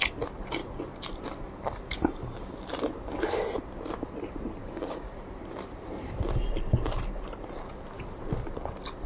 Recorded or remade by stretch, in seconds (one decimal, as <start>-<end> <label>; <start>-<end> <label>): 0.0-4.6 recorded; 4.6-5.2 remade; 5.2-9.1 recorded